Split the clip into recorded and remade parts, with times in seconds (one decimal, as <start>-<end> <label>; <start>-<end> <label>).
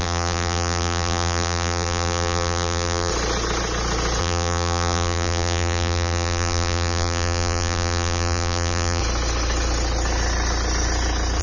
0.0-3.1 remade; 3.1-4.2 recorded; 4.2-9.0 remade; 9.0-11.4 recorded